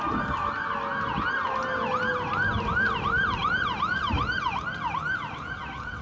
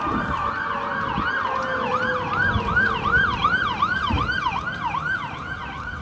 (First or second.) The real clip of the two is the first